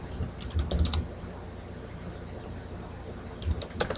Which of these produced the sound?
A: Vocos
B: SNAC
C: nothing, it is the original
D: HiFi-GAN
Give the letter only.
C